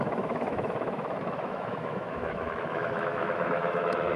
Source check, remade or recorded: remade